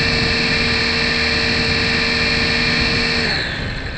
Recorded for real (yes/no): yes